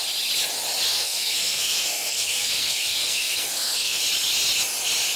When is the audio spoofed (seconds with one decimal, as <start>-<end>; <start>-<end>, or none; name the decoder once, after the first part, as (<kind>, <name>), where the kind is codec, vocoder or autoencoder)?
0.9-4.0 (codec, SNAC)